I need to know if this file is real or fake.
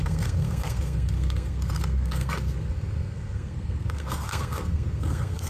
fake